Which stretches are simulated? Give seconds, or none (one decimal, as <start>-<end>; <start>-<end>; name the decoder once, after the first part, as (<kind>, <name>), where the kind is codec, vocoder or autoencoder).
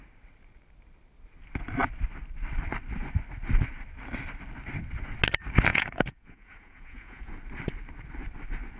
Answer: 5.7-7.3 (vocoder, Vocos)